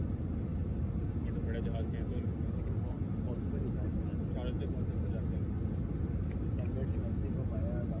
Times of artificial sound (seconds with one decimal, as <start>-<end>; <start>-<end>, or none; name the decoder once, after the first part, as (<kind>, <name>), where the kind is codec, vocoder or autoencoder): none